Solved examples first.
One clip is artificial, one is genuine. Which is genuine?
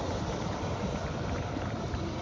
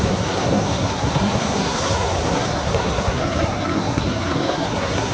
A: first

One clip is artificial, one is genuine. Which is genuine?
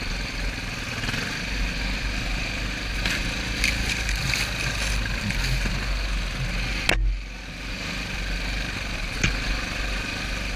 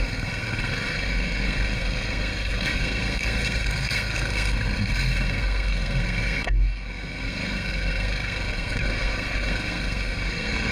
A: first